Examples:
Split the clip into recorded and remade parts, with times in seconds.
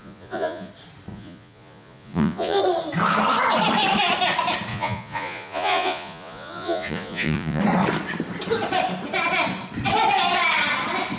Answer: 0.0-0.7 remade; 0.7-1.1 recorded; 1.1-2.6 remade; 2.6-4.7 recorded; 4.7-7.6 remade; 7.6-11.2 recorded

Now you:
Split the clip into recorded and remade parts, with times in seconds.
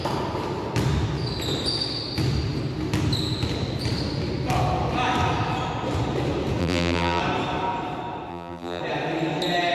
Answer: 0.0-6.6 recorded; 6.6-7.2 remade; 7.2-8.3 recorded; 8.3-8.8 remade; 8.8-9.7 recorded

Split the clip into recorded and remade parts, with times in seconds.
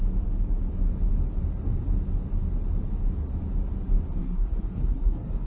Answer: 0.0-4.2 recorded; 4.2-5.5 remade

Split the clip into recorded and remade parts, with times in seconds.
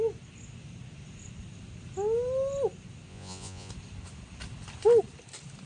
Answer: 0.0-3.1 recorded; 3.1-3.7 remade; 3.7-5.7 recorded